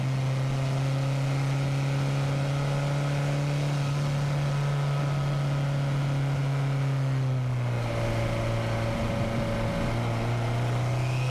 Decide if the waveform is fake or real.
real